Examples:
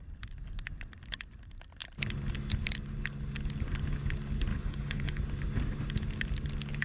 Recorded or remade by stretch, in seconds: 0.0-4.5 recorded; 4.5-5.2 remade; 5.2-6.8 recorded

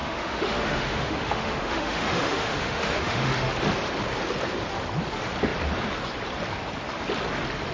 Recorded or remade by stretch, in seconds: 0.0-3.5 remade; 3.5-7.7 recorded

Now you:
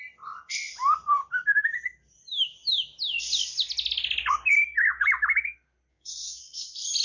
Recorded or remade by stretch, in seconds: 0.0-5.9 recorded; 5.9-6.6 remade; 6.6-7.0 recorded

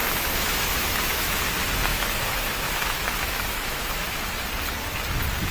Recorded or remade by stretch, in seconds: 0.0-1.4 remade; 1.4-1.9 recorded; 1.9-4.2 remade; 4.2-5.5 recorded

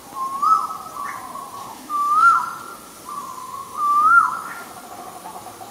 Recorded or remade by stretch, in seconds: 0.0-1.6 recorded; 1.6-2.6 remade; 2.6-3.4 recorded; 3.4-4.7 remade; 4.7-5.7 recorded

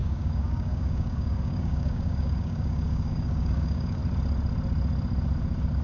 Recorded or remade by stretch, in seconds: 0.0-4.0 remade; 4.0-5.8 recorded

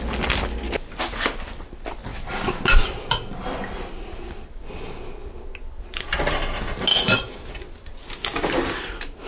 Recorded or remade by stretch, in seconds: 0.0-6.9 recorded; 6.9-7.5 remade; 7.5-9.3 recorded

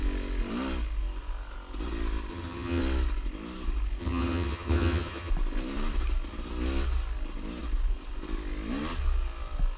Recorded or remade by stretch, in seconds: 0.0-2.3 recorded; 2.3-2.8 remade; 2.8-4.0 recorded; 4.0-5.3 remade; 5.3-9.8 recorded